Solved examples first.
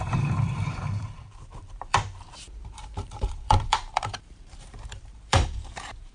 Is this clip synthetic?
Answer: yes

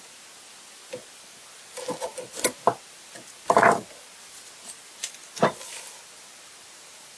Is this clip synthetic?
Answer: no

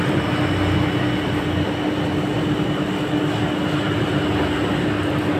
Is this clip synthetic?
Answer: no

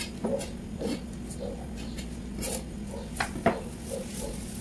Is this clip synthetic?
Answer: no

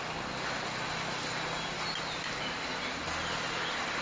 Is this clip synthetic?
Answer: no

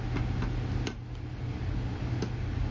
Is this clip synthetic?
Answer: no